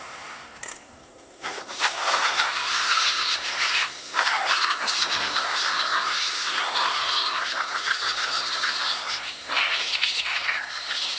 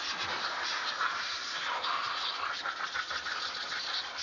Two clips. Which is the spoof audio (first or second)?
first